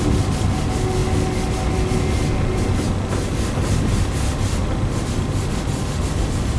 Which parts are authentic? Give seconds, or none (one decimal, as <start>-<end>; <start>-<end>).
0.0-6.6